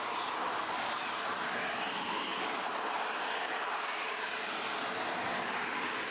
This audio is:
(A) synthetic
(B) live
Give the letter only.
B